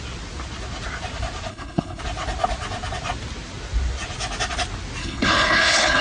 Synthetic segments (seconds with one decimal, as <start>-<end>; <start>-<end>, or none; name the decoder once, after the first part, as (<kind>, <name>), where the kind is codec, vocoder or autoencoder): 1.5-2.0 (codec, HILCodec); 5.0-6.0